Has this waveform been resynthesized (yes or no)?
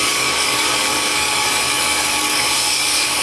yes